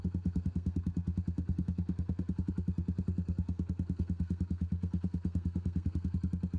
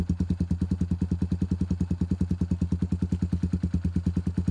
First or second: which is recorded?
second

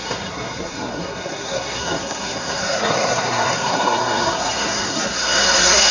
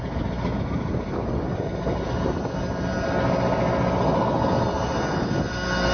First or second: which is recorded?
second